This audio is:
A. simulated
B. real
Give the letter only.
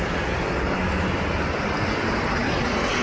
B